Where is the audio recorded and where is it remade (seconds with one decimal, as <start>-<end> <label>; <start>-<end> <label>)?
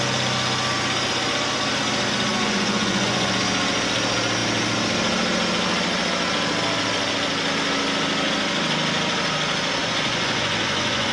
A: 0.0-2.3 recorded; 2.3-3.3 remade; 3.3-9.8 recorded; 9.8-11.1 remade